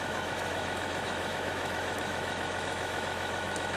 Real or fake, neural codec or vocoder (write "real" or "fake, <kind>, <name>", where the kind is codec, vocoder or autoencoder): fake, autoencoder, DAC-VAE